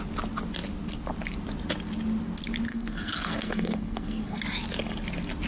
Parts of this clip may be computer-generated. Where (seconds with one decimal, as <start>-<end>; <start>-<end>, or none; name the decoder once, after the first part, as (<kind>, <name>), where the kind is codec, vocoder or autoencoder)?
2.7-4.4 (codec, SNAC)